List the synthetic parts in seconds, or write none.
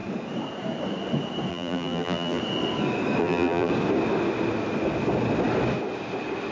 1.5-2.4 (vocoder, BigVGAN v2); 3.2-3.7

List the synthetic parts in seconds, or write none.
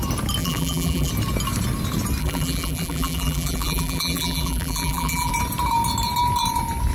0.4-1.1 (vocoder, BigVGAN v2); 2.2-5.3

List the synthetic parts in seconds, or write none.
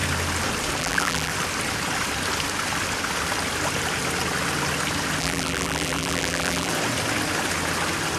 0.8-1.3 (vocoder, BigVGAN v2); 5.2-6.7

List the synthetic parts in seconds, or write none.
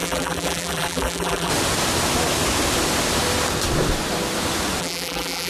0.0-1.5 (vocoder, BigVGAN v2); 4.8-5.5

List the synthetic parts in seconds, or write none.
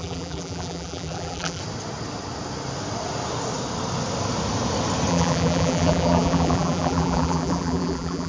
0.0-1.6 (vocoder, BigVGAN v2); 5.1-8.3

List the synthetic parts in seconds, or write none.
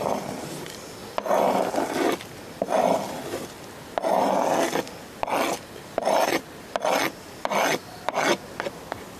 none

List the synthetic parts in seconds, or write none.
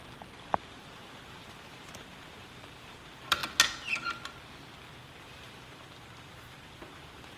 0.7-3.4 (vocoder, BigVGAN v2); 5.2-7.4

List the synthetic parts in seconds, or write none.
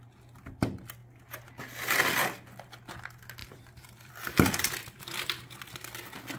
3.4-5.3 (vocoder, BigVGAN v2)